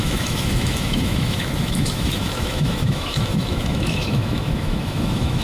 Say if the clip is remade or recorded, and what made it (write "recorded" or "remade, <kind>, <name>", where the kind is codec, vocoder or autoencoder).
remade, autoencoder, DAC-VAE